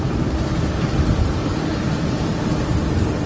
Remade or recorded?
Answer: recorded